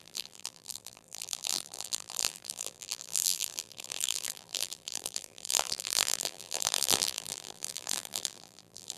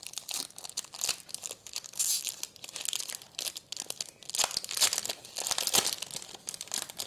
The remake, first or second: first